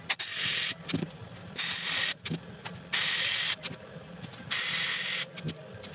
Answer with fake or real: real